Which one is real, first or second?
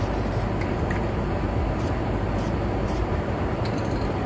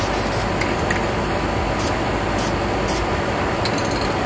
second